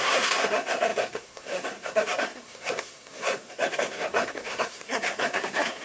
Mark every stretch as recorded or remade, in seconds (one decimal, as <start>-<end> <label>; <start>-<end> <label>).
0.0-5.8 remade